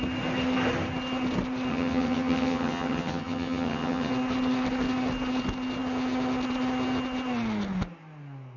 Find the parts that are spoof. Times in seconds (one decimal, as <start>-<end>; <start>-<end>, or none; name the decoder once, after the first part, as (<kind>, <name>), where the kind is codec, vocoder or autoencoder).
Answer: 1.7-4.1 (vocoder, HiFi-GAN)